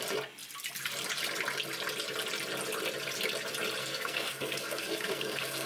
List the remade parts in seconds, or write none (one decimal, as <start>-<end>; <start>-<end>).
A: 3.8-5.7